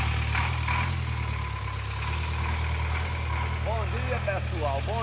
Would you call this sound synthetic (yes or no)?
no